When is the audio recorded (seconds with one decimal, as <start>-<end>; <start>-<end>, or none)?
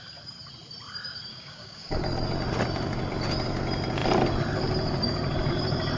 0.0-1.3; 2.0-6.0